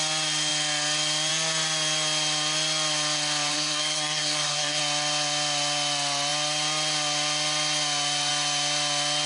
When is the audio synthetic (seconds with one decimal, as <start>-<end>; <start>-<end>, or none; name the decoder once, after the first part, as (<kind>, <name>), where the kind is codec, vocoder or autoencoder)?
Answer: 3.5-4.8 (codec, SNAC)